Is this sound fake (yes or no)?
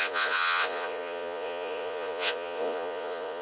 yes